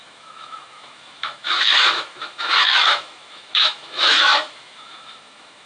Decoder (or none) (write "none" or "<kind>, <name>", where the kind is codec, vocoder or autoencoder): autoencoder, DAC-VAE